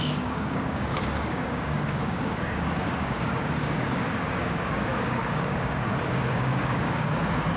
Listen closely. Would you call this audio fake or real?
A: fake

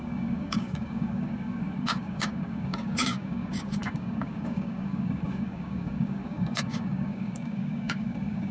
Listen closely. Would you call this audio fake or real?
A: fake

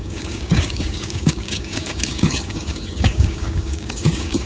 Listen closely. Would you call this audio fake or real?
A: fake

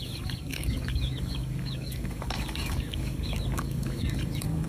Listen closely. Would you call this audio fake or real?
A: fake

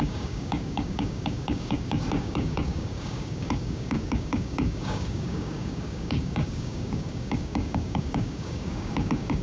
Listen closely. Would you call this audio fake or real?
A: fake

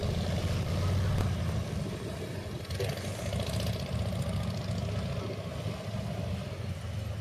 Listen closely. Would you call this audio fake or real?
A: real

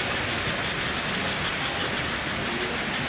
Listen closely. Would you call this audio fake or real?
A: real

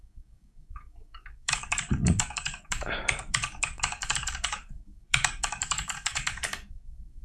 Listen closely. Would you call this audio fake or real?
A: fake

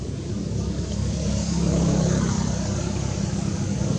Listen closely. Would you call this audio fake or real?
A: fake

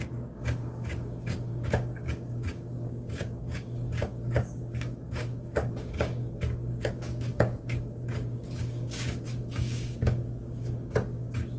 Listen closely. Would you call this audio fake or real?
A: fake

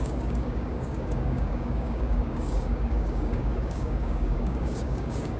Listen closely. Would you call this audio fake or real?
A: fake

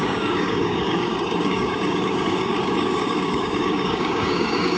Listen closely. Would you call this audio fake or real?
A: fake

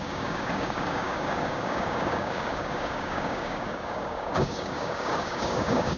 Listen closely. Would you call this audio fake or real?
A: fake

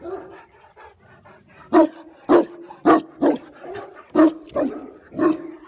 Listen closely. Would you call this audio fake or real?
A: real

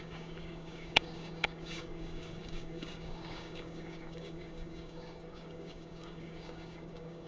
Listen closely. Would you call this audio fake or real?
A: fake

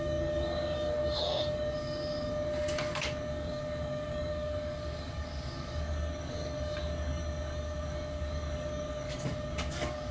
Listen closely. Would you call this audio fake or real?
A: fake